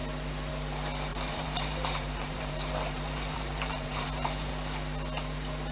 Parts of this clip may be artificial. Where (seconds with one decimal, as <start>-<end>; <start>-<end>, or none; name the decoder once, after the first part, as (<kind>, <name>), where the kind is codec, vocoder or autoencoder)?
1.1-4.5 (vocoder, BigVGAN v2)